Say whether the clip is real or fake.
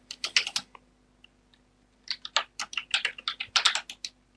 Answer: real